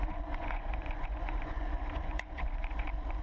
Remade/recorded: remade